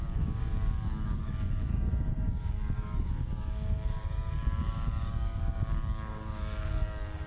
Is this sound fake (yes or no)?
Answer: yes